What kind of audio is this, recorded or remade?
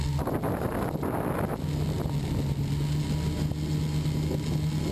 recorded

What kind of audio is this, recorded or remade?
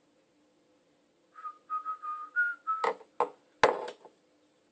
recorded